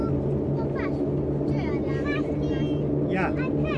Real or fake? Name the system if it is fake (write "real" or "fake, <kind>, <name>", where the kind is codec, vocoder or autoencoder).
real